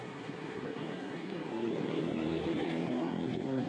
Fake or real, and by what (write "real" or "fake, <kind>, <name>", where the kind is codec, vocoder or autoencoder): fake, codec, SNAC